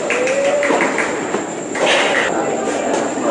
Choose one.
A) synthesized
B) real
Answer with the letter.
B